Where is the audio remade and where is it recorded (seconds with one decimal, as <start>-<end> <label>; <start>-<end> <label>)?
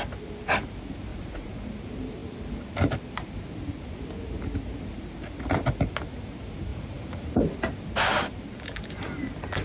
0.0-1.1 recorded; 1.1-1.6 remade; 1.6-6.7 recorded; 6.7-7.4 remade; 7.4-9.6 recorded